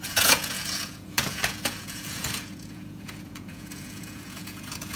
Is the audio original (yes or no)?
no